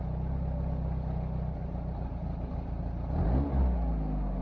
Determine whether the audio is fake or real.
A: real